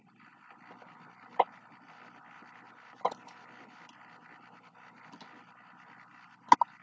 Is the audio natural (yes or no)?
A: yes